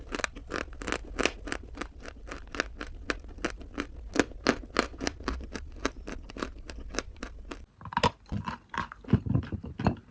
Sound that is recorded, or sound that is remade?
recorded